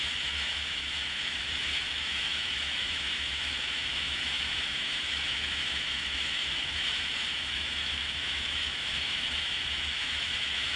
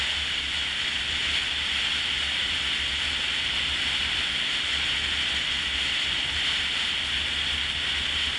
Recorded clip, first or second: second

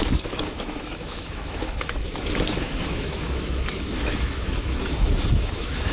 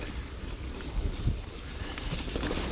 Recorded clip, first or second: second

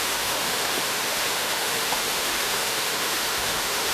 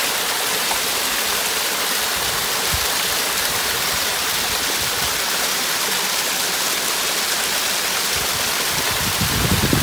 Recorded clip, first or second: second